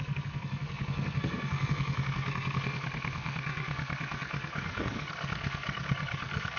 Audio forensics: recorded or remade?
remade